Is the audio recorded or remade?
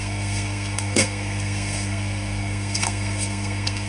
remade